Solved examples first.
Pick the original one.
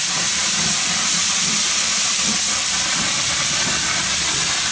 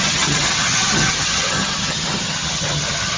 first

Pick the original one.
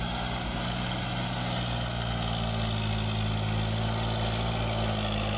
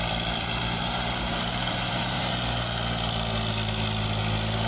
first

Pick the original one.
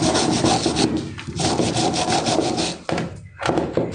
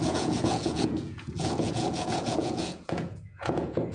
first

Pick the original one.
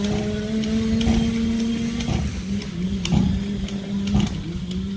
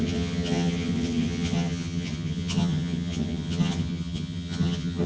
first